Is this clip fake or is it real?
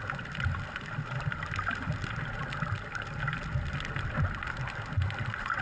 real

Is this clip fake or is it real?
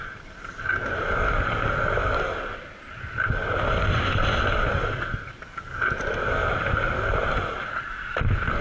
real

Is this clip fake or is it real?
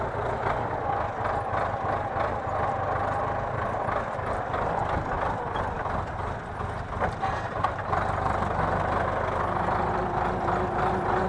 real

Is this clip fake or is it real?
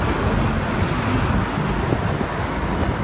real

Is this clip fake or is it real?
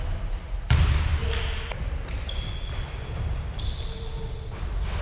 real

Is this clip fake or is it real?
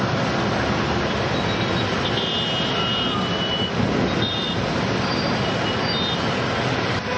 real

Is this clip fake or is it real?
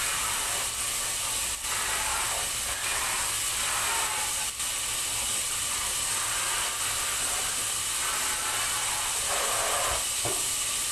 real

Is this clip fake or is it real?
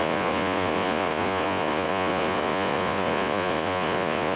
fake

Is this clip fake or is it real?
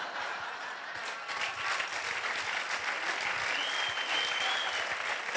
real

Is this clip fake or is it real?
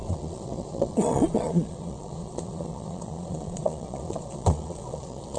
fake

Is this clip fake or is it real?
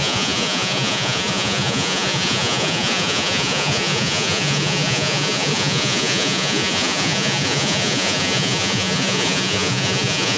fake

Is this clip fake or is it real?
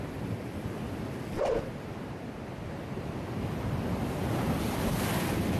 real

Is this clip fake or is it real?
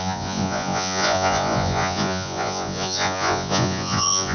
fake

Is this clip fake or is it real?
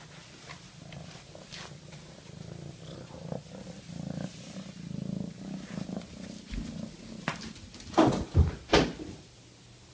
real